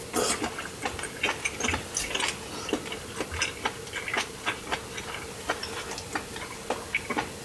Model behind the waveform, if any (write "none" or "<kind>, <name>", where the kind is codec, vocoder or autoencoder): none